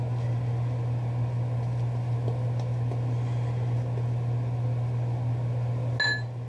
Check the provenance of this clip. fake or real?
real